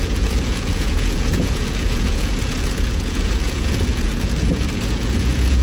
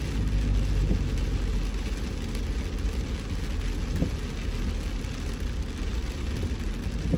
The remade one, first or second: first